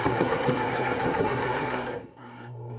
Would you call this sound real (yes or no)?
no